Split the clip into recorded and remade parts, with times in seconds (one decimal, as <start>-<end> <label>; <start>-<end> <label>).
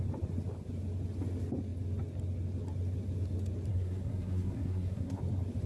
0.0-3.7 recorded; 3.7-5.2 remade; 5.2-5.7 recorded